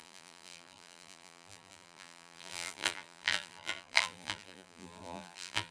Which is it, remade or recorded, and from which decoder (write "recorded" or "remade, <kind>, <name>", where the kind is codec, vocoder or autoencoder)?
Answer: remade, vocoder, BigVGAN v2